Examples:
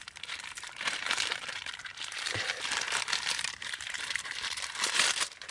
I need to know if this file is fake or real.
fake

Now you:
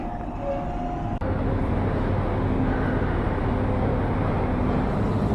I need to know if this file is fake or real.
real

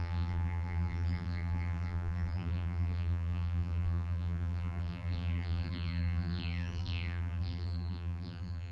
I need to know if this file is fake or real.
fake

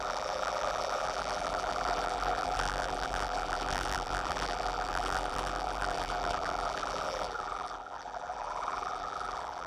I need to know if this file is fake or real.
fake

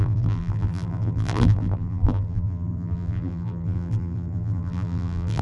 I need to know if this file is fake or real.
fake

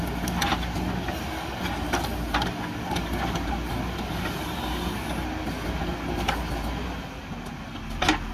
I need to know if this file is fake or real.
real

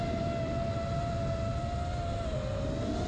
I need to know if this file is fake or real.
real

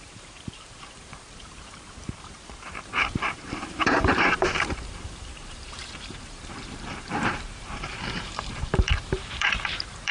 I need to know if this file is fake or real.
fake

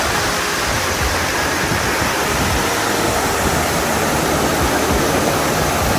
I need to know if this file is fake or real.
real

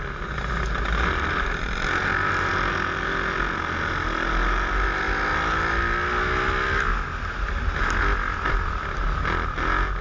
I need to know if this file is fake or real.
real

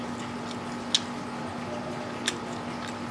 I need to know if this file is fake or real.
real